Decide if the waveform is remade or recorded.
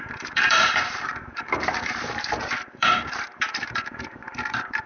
remade